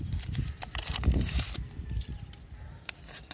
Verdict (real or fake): fake